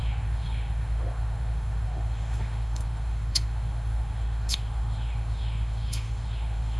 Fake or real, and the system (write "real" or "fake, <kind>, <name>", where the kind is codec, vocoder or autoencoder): fake, autoencoder, DAC-VAE